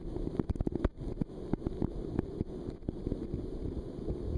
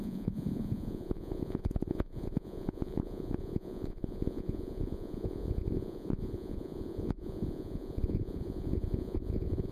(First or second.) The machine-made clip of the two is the second